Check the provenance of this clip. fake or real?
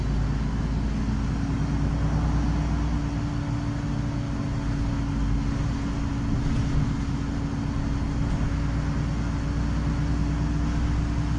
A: real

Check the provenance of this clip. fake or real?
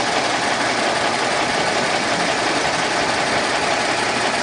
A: fake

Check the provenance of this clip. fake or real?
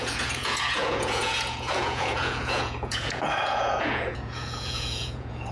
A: fake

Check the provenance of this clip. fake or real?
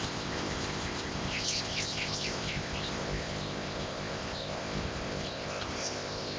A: fake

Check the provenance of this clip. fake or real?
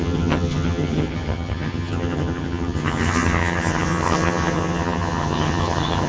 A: fake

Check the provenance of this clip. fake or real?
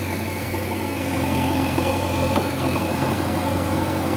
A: fake